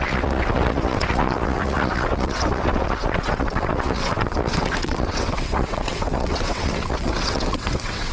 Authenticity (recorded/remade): remade